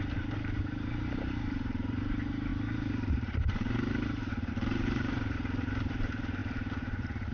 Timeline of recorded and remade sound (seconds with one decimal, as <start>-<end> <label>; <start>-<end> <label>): 0.0-7.3 remade